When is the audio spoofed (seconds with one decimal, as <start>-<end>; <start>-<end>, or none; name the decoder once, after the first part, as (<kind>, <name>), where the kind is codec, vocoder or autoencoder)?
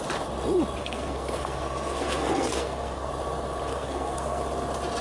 0.8-3.1 (codec, SNAC); 3.7-4.4